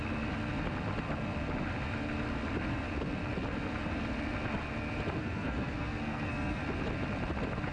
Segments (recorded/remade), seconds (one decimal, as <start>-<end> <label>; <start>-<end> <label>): 0.0-5.2 recorded; 5.2-6.6 remade; 6.6-7.7 recorded